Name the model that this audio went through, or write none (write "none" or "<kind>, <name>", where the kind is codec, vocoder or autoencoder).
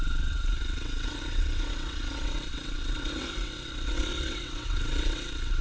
vocoder, WaveNeXt